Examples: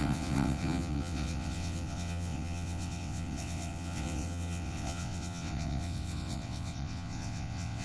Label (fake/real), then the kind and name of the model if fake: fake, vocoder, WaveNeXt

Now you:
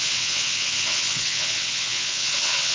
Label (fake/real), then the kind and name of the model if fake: fake, vocoder, WaveNeXt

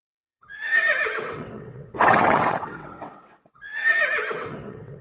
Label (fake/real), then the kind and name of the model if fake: fake, vocoder, WaveNeXt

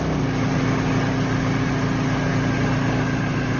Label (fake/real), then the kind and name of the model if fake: real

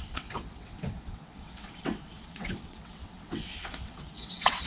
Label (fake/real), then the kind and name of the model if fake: fake, vocoder, WaveNeXt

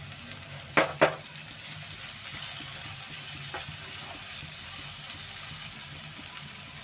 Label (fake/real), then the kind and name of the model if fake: real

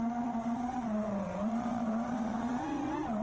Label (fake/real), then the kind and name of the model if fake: fake, vocoder, WaveNeXt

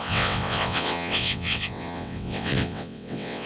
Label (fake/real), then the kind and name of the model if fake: fake, vocoder, WaveNeXt